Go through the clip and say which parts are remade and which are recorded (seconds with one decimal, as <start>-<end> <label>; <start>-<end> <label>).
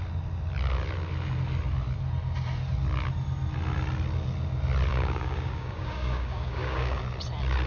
0.0-4.9 recorded; 4.9-7.0 remade; 7.0-7.7 recorded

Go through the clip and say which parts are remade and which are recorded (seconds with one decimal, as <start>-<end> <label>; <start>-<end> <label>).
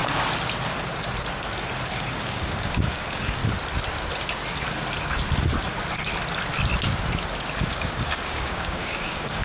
0.0-1.9 recorded; 1.9-3.4 remade; 3.4-7.6 recorded; 7.6-9.4 remade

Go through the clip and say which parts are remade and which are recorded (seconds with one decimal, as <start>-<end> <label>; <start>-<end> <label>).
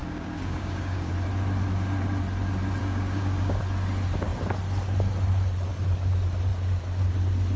0.0-1.1 remade; 1.1-2.8 recorded; 2.8-3.6 remade; 3.6-7.6 recorded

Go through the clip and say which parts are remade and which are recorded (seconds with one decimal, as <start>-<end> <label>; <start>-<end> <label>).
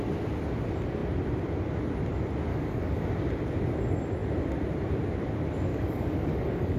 0.0-2.5 recorded; 2.5-3.1 remade; 3.1-5.7 recorded; 5.7-6.8 remade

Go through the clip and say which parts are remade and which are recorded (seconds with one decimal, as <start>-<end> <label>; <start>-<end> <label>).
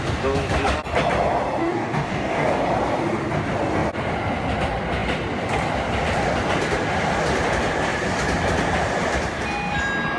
0.0-1.6 recorded; 1.6-2.6 remade; 2.6-10.2 recorded